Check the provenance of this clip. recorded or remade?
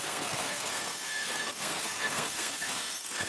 remade